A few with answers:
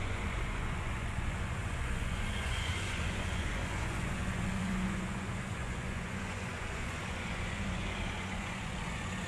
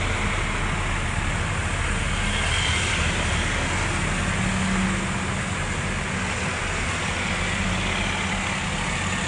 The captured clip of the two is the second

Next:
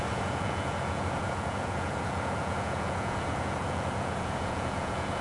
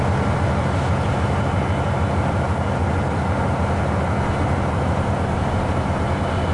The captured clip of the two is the second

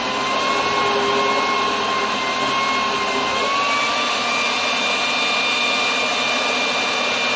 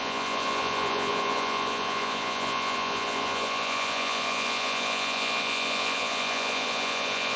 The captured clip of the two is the first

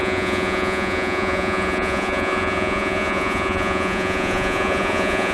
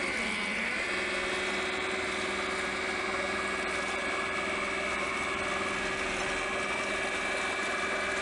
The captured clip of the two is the second